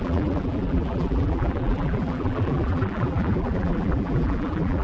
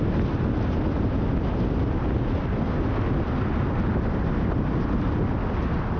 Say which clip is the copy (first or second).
first